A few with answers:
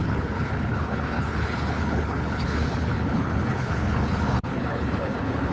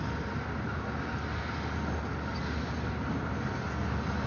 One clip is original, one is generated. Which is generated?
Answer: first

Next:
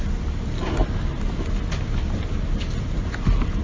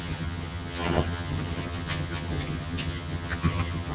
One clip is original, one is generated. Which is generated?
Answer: second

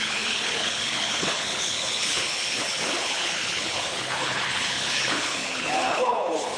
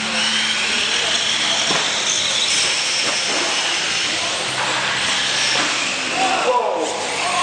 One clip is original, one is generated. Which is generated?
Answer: first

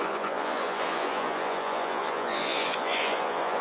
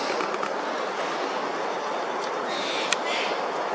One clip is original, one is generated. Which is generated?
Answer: first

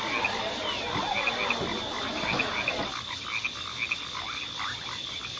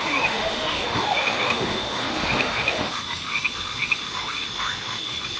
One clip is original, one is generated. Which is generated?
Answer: second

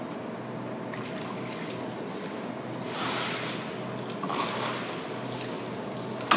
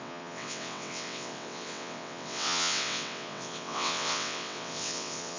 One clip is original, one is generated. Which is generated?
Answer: second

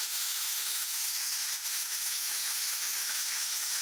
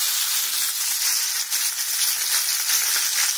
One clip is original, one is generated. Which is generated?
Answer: first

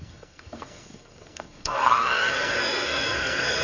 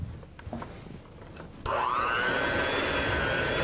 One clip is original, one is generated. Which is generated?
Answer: first